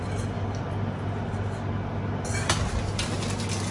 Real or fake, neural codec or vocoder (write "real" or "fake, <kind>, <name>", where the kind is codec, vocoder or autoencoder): real